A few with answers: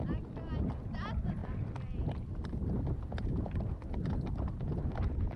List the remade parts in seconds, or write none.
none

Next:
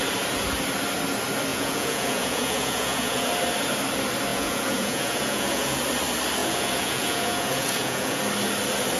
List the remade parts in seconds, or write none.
1.5-3.3 (vocoder, Vocos); 4.3-5.8; 6.4-8.2

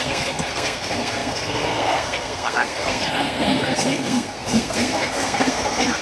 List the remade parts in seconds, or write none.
0.0-6.0 (codec, SNAC)

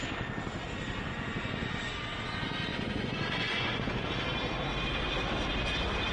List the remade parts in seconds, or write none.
1.1-1.9 (vocoder, Vocos); 2.7-4.1

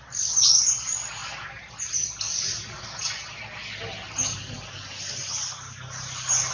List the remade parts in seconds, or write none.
none

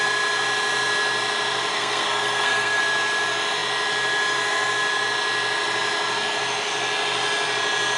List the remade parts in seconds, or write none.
1.7-2.8 (codec, SNAC)